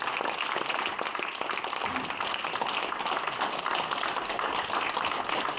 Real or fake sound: real